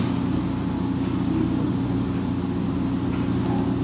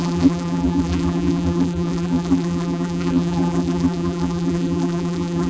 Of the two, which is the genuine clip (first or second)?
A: first